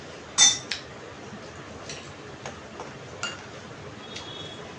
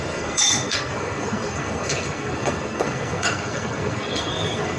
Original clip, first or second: first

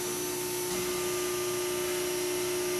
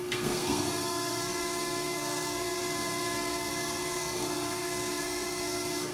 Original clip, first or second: first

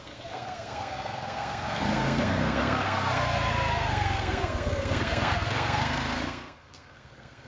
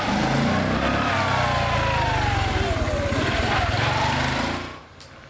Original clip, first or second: second